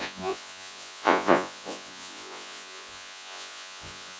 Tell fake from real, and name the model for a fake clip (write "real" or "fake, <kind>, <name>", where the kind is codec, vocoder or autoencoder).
fake, vocoder, Vocos